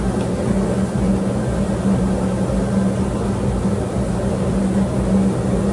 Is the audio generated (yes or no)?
no